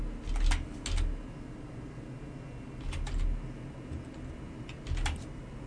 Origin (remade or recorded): recorded